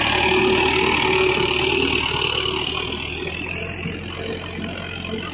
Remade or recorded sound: recorded